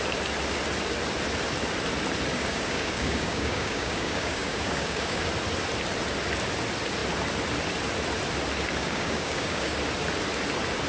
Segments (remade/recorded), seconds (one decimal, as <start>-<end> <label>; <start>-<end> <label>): 0.0-2.3 recorded; 2.3-5.2 remade; 5.2-8.8 recorded; 8.8-9.8 remade; 9.8-10.9 recorded